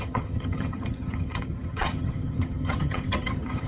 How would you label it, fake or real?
fake